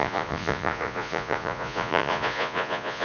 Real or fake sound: fake